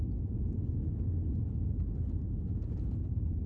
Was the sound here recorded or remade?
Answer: recorded